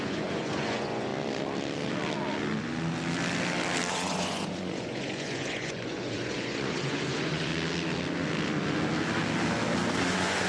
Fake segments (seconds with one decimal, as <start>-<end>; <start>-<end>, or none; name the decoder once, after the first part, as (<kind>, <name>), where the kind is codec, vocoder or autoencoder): 0.0-1.1 (vocoder, Vocos); 3.9-7.5; 10.0-10.5